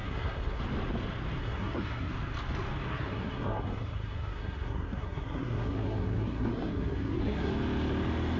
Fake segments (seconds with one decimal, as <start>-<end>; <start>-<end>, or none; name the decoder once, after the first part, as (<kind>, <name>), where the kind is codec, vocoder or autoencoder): 0.0-0.6 (codec, SNAC); 1.4-2.1; 2.9-7.5